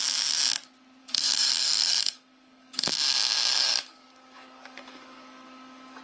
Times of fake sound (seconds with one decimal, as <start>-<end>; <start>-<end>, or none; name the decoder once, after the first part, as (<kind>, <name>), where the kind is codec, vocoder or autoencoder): 1.0-2.9 (codec, DAC); 3.5-6.0